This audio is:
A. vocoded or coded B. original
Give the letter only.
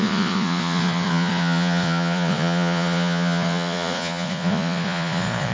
A